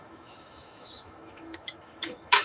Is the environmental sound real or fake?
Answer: fake